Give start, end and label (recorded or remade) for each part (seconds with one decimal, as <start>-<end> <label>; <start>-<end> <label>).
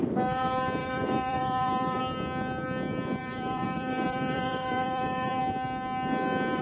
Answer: 0.0-0.8 recorded; 0.8-2.0 remade; 2.0-3.2 recorded; 3.2-5.4 remade; 5.4-6.6 recorded